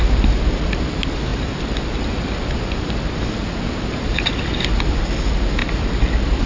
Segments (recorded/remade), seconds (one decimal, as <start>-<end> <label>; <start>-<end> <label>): 0.0-6.5 recorded